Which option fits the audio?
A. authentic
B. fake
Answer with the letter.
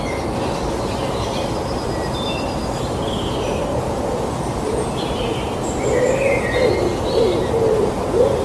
A